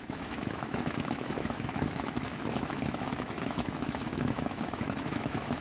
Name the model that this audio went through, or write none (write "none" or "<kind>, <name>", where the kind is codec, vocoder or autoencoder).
autoencoder, DAC-VAE